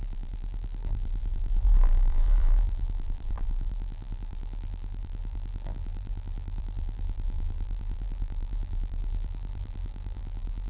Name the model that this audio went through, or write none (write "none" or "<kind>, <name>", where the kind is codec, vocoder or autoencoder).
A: vocoder, BigVGAN v2